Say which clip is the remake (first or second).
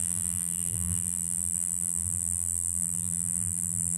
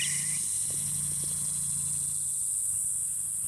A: first